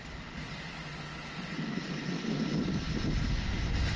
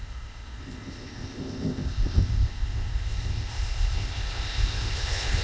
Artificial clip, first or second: second